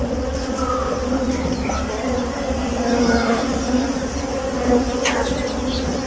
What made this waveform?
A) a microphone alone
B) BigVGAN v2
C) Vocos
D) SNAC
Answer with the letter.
A